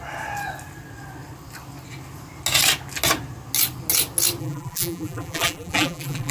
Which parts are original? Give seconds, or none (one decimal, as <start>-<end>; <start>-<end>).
0.0-4.4